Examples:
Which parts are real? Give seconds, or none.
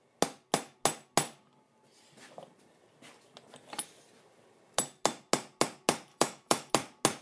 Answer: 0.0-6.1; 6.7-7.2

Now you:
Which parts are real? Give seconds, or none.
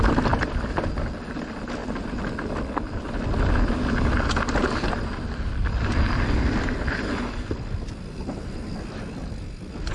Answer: 0.0-9.9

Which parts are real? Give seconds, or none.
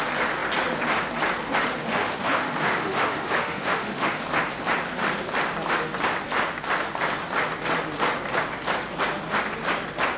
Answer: 0.0-1.8; 4.2-10.2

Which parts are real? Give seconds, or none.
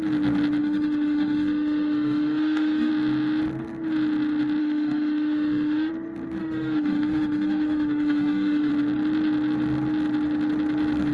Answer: 0.0-0.6; 2.9-4.6; 5.9-6.4; 8.7-11.1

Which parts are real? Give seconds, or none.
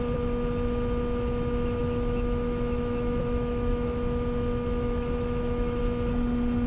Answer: 0.0-1.8; 5.8-6.7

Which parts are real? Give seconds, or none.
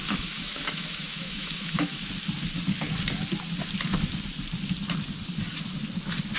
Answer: 2.1-6.4